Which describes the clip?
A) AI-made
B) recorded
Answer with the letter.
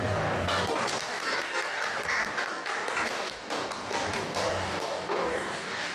A